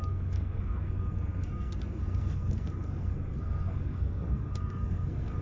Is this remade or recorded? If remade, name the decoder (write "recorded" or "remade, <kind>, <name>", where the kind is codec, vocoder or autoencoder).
remade, codec, SNAC